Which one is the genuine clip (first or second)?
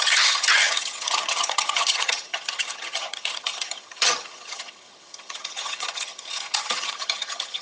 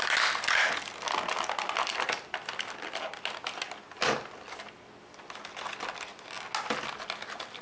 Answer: second